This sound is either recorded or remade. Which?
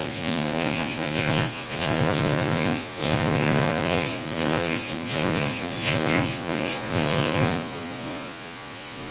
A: remade